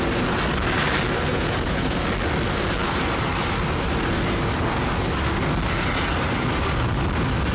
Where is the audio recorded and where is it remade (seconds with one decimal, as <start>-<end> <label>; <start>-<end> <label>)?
0.0-1.3 recorded; 1.3-2.0 remade; 2.0-7.5 recorded